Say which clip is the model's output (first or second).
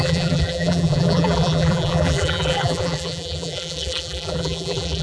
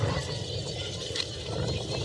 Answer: first